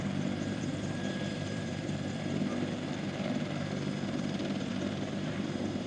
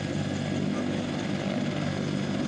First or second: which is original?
second